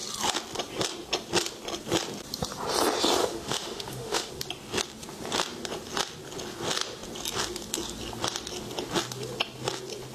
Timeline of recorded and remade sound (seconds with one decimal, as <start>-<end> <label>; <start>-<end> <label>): 0.0-3.2 recorded; 3.2-4.3 remade; 4.3-10.1 recorded